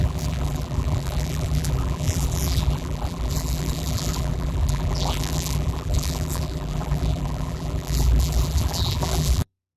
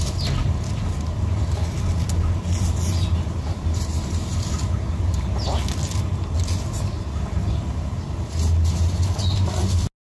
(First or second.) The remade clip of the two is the first